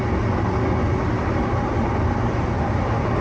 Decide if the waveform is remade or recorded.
recorded